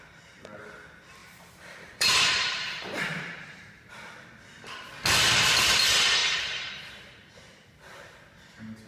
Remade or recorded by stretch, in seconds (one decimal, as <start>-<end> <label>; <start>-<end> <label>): 0.0-1.2 recorded; 1.2-3.9 remade; 3.9-6.2 recorded; 6.2-6.7 remade; 6.7-8.9 recorded